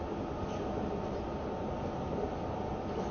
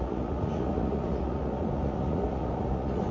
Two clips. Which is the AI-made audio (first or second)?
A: second